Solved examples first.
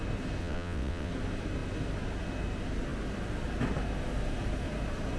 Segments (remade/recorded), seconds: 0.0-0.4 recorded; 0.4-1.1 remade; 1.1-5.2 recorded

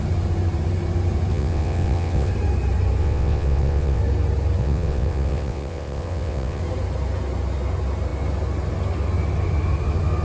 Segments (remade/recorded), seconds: 0.0-1.3 recorded; 1.3-2.3 remade; 2.3-3.0 recorded; 3.0-4.0 remade; 4.0-4.6 recorded; 4.6-6.6 remade; 6.6-10.2 recorded